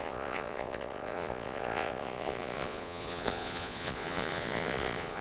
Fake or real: fake